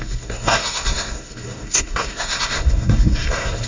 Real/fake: fake